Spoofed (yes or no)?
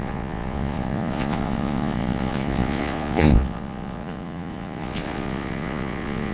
yes